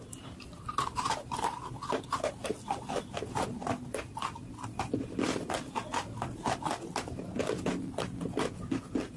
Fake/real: real